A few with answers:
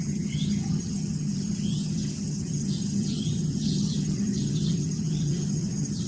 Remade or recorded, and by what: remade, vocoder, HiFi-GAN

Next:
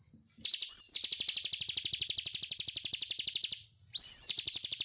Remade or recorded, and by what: recorded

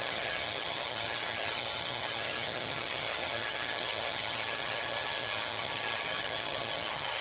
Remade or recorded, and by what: remade, vocoder, HiFi-GAN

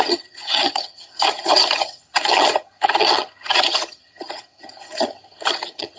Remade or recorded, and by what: remade, vocoder, HiFi-GAN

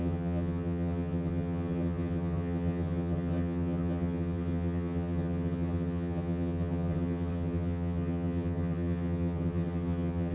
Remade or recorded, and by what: remade, vocoder, HiFi-GAN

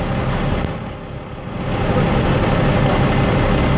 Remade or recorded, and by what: recorded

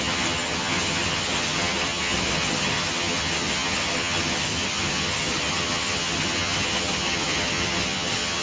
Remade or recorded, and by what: remade, vocoder, HiFi-GAN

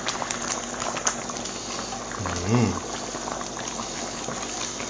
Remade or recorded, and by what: recorded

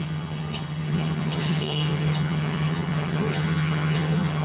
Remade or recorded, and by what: remade, vocoder, HiFi-GAN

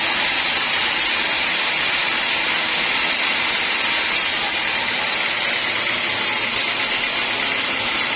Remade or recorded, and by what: recorded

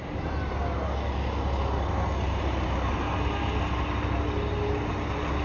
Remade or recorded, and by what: recorded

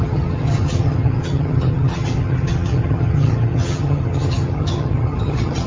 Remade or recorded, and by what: remade, vocoder, HiFi-GAN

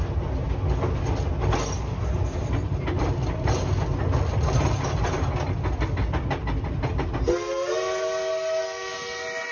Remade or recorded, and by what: recorded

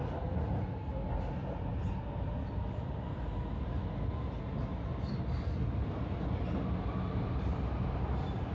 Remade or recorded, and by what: recorded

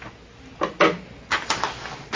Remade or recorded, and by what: recorded